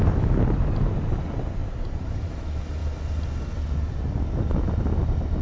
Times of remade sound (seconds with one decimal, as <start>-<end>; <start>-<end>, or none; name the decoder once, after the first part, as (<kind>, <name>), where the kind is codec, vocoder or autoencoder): 1.6-2.2 (vocoder, BigVGAN v2)